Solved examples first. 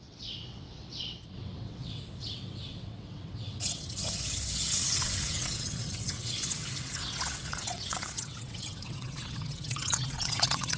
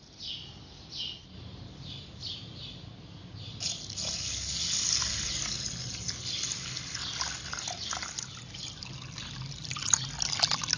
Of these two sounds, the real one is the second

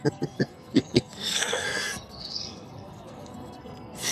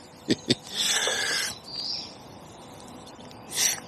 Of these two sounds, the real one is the second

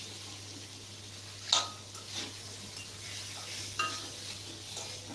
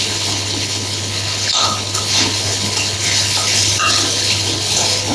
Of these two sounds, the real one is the first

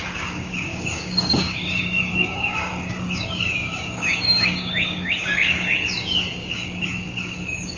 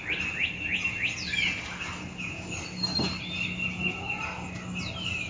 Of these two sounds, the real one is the second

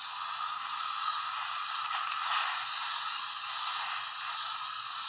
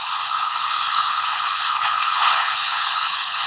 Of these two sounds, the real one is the first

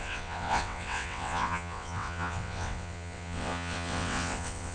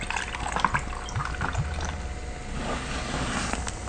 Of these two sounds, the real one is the second